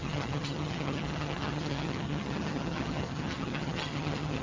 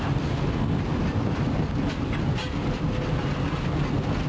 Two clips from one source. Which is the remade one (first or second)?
first